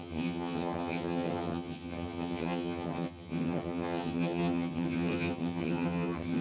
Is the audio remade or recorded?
remade